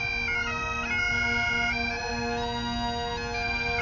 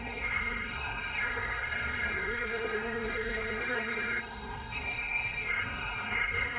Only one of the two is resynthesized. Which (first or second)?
second